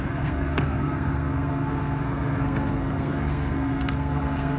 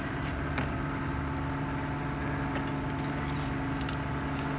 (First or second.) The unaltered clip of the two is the second